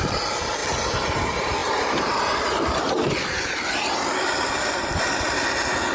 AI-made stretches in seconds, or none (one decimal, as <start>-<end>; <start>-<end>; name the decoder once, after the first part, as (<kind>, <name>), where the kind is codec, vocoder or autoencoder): 0.6-1.2 (vocoder, BigVGAN v2); 1.6-5.1